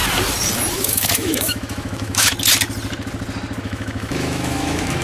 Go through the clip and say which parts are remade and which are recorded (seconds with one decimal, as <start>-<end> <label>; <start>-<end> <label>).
0.0-0.7 recorded; 0.7-2.3 remade; 2.3-3.6 recorded; 3.6-5.0 remade